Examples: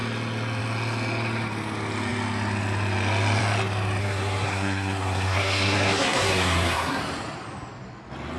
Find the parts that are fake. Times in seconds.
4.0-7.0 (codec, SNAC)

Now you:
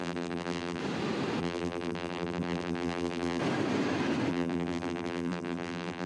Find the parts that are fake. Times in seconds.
0.0-0.8 (vocoder, BigVGAN v2); 1.4-3.4; 4.3-6.1

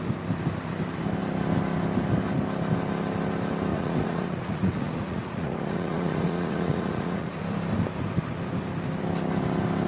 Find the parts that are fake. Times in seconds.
3.7-7.4 (vocoder, Vocos)

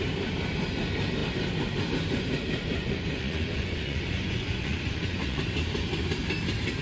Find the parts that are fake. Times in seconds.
2.8-5.4 (vocoder, Vocos)

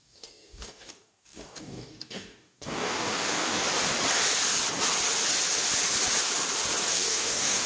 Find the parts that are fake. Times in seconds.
0.0-3.6 (codec, DAC); 6.9-7.7

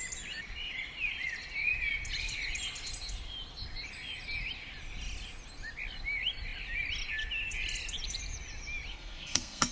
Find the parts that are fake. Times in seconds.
8.9-9.7 (codec, SNAC)